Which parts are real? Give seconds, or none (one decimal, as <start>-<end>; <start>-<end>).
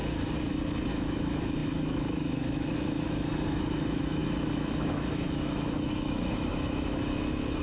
0.0-0.9